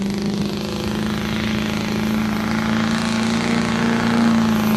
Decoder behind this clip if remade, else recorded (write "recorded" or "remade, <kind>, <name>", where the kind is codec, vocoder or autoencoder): recorded